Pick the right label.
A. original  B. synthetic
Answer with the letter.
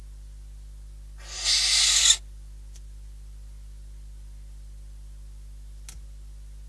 A